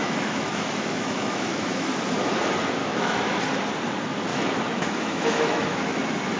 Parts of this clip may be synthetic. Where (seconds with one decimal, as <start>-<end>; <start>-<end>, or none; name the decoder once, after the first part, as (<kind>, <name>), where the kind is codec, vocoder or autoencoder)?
0.0-1.9 (autoencoder, DAC-VAE); 2.8-3.4; 4.3-6.0